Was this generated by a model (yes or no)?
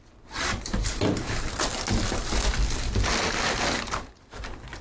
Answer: no